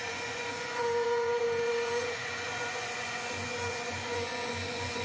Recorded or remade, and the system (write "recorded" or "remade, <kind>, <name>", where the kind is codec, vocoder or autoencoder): remade, vocoder, Vocos